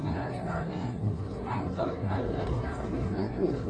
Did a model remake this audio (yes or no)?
yes